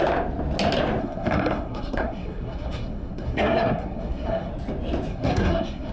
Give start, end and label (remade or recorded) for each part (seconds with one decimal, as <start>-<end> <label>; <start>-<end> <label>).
0.0-1.0 recorded; 1.0-4.5 remade; 4.5-5.1 recorded; 5.1-5.9 remade